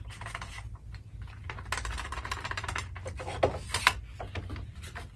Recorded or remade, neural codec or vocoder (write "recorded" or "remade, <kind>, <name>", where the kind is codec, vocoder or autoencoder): recorded